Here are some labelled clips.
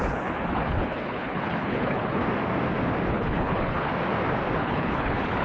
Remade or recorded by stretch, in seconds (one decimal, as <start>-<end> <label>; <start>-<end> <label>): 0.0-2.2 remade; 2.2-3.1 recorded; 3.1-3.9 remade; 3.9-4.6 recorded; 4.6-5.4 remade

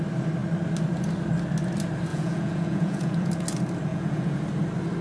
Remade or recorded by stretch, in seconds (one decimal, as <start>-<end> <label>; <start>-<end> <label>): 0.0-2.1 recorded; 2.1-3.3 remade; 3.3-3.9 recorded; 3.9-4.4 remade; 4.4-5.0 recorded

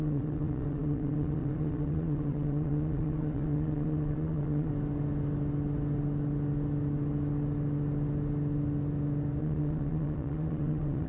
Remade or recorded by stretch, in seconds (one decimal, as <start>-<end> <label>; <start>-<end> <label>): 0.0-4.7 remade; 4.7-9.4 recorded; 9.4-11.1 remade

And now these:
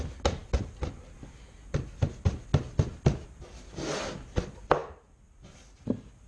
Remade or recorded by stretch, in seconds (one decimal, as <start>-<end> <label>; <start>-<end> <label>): 0.0-6.3 recorded